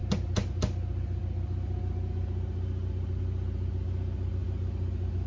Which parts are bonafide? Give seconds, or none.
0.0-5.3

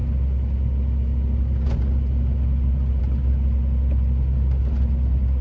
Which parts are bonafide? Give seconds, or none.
0.0-5.4